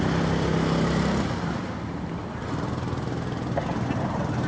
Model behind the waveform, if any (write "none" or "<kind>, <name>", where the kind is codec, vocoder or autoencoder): none